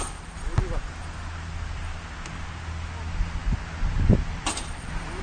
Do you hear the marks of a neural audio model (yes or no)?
no